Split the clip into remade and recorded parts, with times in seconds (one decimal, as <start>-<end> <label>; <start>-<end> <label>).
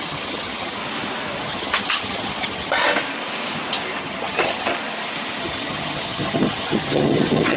0.0-0.8 remade; 0.8-1.4 recorded; 1.4-2.8 remade; 2.8-4.0 recorded; 4.0-4.7 remade; 4.7-5.4 recorded; 5.4-7.6 remade